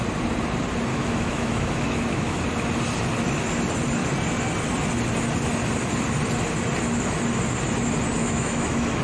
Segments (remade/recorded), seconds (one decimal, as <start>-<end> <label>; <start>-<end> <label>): 0.0-0.9 recorded; 0.9-2.4 remade; 2.4-8.2 recorded; 8.2-9.0 remade